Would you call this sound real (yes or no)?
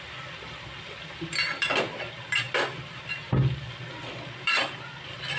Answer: no